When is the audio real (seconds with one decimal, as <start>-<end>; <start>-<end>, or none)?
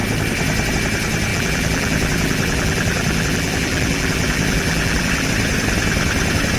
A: 0.0-1.3; 5.3-6.6